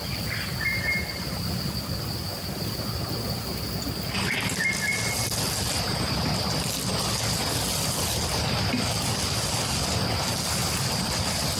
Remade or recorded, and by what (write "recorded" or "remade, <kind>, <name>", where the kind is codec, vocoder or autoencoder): recorded